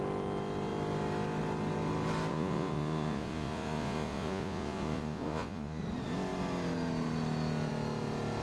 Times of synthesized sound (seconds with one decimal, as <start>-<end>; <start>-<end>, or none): 2.3-5.8